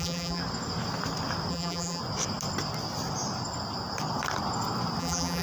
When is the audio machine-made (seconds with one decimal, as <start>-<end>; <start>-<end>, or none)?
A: 0.0-0.4; 1.5-2.0; 5.0-5.4